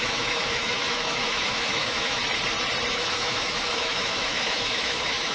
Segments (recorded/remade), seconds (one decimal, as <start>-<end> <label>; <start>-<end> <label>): 0.0-2.2 remade; 2.2-2.9 recorded; 2.9-5.3 remade